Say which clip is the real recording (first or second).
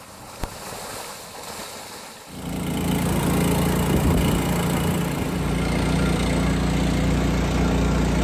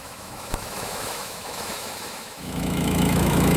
first